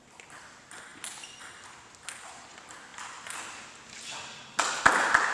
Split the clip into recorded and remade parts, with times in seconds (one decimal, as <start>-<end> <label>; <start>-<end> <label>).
0.0-5.3 recorded